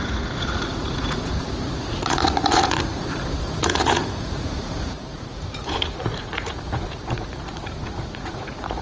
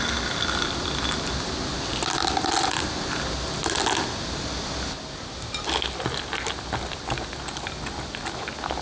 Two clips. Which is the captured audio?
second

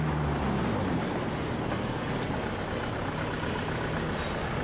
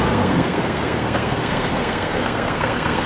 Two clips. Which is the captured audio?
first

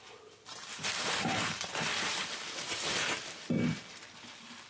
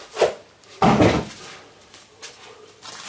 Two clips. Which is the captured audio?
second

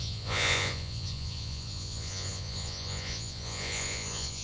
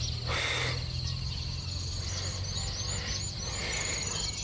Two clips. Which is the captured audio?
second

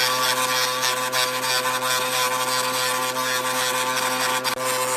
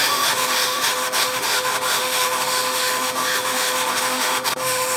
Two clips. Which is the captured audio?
first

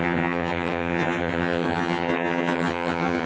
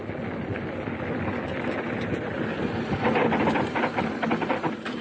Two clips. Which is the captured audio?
second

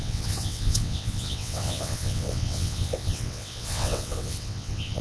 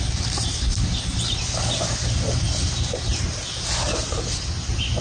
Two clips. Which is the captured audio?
second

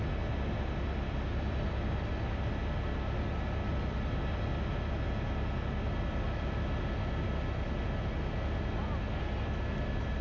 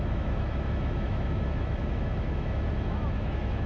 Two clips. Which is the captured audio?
first